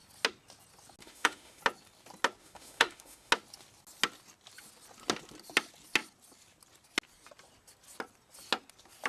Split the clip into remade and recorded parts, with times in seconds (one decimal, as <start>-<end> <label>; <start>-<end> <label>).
0.0-1.0 recorded; 1.0-1.6 remade; 1.6-2.4 recorded; 2.4-3.3 remade; 3.3-9.1 recorded